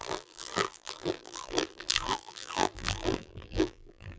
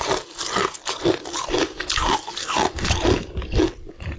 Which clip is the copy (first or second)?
first